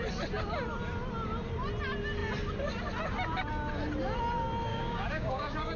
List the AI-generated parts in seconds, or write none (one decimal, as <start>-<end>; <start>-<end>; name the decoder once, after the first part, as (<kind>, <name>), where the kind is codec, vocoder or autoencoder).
4.7-5.8 (codec, DAC)